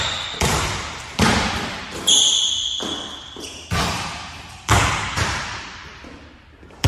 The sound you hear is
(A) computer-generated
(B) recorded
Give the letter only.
A